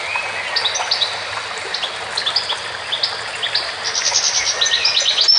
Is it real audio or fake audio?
real